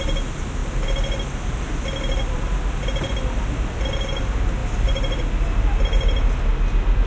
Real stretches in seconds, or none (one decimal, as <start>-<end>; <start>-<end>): 0.0-7.1